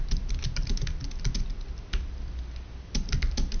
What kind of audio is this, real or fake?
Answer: real